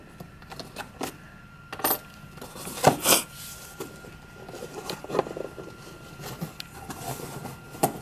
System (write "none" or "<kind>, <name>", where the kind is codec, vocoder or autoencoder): none